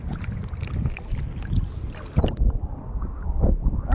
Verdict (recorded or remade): recorded